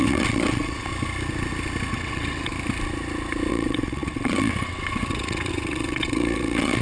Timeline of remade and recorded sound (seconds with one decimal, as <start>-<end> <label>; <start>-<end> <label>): 0.0-0.9 remade; 0.9-1.9 recorded; 1.9-2.5 remade; 2.5-3.5 recorded; 3.5-6.8 remade